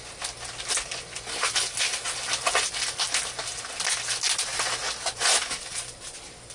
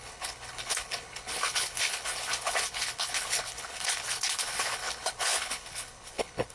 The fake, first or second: second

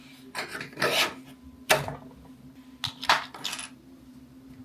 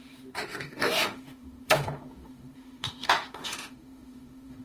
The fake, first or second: second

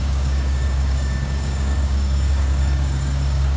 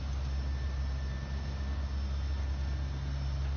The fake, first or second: first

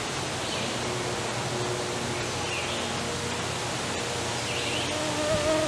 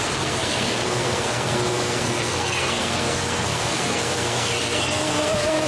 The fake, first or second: second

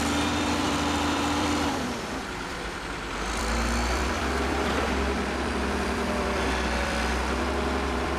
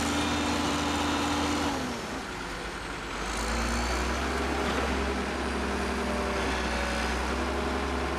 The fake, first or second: first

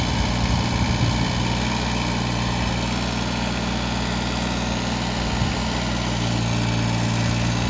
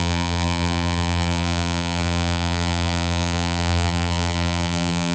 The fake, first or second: second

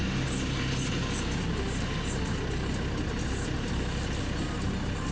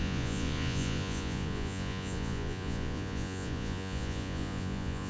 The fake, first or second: second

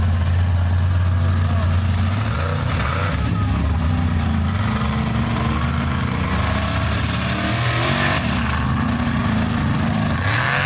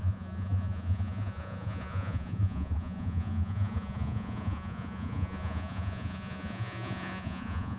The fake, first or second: second